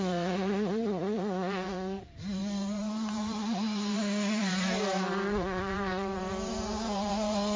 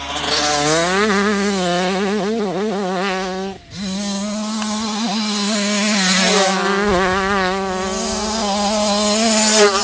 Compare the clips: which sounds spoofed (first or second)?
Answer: first